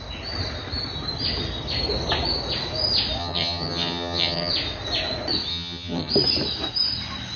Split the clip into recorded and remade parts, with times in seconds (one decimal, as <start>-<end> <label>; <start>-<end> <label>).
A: 0.0-3.2 recorded; 3.2-4.5 remade; 4.5-5.5 recorded; 5.5-6.1 remade; 6.1-7.4 recorded